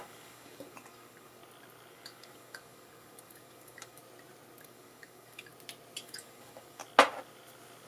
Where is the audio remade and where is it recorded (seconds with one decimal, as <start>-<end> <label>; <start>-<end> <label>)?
0.0-1.4 remade; 1.4-1.9 recorded; 1.9-4.0 remade; 4.0-4.6 recorded; 4.6-5.5 remade; 5.5-6.0 recorded; 6.0-6.8 remade; 6.8-7.9 recorded